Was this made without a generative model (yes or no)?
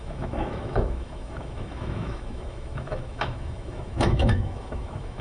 no